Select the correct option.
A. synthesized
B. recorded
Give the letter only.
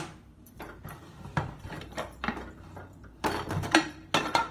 A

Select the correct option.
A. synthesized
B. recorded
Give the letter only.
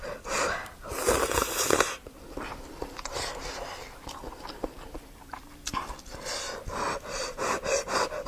A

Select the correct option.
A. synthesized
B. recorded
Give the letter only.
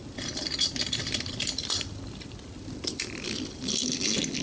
A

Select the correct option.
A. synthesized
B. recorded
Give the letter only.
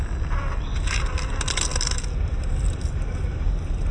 B